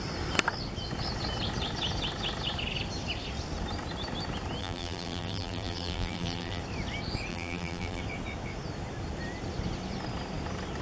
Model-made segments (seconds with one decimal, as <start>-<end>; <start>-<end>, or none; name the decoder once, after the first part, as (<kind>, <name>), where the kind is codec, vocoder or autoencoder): 4.6-6.6 (vocoder, BigVGAN v2); 7.3-8.0